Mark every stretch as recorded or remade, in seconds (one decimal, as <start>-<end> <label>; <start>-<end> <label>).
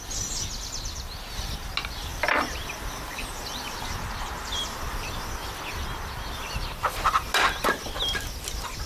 0.0-8.9 recorded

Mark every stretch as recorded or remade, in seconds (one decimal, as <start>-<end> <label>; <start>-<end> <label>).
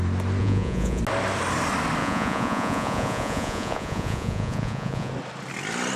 0.0-0.4 recorded; 0.4-1.0 remade; 1.0-2.0 recorded; 2.0-5.1 remade; 5.1-6.0 recorded